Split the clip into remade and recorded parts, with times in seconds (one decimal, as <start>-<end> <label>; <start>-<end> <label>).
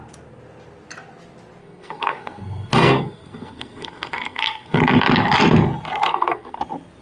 0.0-1.6 recorded; 1.6-4.8 remade; 4.8-6.1 recorded; 6.1-6.6 remade; 6.6-7.0 recorded